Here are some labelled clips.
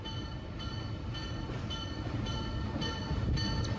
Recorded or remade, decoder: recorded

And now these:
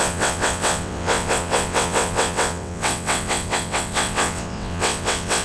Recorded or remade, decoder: remade, vocoder, WaveNeXt